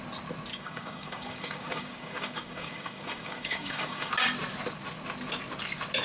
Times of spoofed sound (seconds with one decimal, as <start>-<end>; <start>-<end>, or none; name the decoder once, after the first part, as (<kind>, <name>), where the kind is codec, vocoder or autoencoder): 0.5-4.1 (codec, DAC)